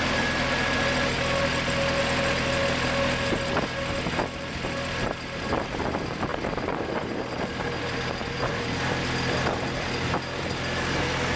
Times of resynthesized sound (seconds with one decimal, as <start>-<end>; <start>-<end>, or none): 6.3-9.9